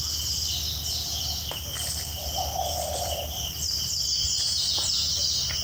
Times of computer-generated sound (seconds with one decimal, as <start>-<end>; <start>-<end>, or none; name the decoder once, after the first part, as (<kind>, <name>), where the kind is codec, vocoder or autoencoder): none